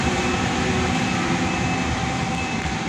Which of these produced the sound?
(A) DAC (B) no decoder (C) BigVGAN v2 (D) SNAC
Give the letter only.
B